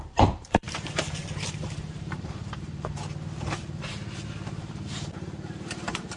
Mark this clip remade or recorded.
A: remade